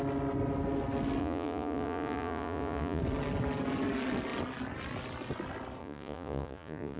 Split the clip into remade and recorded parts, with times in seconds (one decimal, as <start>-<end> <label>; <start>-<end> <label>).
0.0-1.2 recorded; 1.2-3.0 remade; 3.0-5.8 recorded; 5.8-7.0 remade